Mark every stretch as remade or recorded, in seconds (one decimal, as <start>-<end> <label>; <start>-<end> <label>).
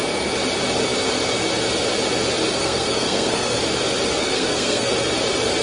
0.0-2.6 recorded; 2.6-3.6 remade; 3.6-4.2 recorded; 4.2-4.9 remade; 4.9-5.6 recorded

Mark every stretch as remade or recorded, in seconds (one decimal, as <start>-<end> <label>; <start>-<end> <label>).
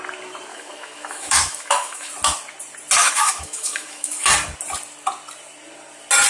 0.0-0.5 recorded; 0.5-2.1 remade; 2.1-3.0 recorded; 3.0-4.3 remade; 4.3-6.3 recorded